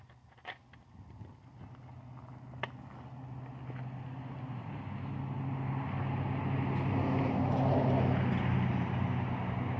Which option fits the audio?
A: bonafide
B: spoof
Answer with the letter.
A